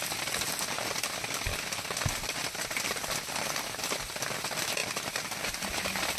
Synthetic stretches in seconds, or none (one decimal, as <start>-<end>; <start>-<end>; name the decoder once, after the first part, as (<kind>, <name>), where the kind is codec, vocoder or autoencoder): none